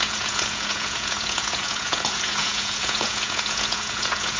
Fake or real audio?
fake